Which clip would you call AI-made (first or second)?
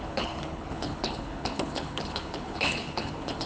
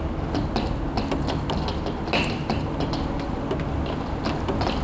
first